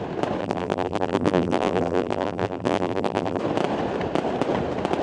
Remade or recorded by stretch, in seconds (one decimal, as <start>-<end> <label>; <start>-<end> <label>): 0.0-0.4 recorded; 0.4-3.4 remade; 3.4-5.0 recorded